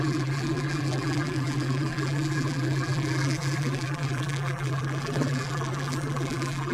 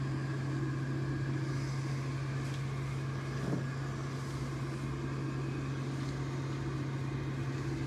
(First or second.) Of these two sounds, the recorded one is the second